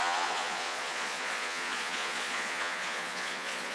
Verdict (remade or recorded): remade